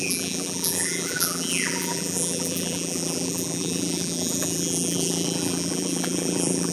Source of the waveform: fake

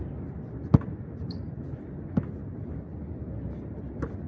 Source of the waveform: real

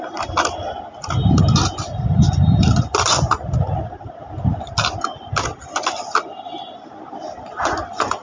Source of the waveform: real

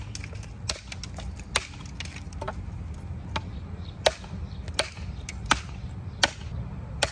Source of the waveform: real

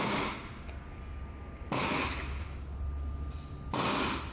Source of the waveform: real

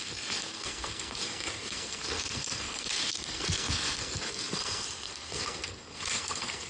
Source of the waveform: fake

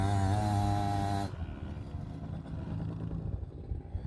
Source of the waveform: real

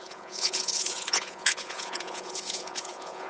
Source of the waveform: fake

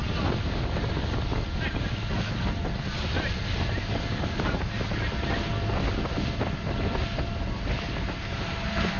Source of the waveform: real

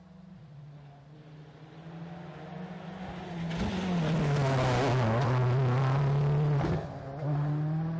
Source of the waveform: real